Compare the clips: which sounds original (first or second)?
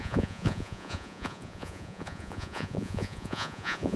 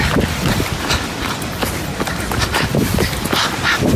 second